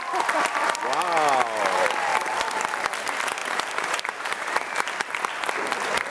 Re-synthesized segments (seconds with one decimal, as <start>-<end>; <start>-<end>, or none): 2.1-2.8; 3.4-4.9